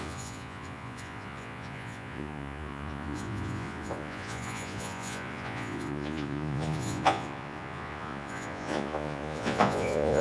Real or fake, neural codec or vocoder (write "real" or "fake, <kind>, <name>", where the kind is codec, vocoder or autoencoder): fake, vocoder, Vocos